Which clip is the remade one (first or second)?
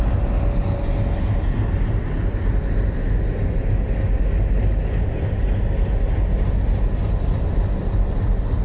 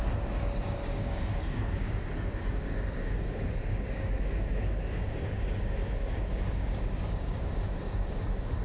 second